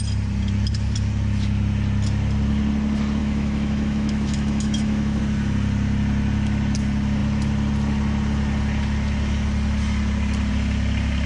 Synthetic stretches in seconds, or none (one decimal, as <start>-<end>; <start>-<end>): 3.2-5.2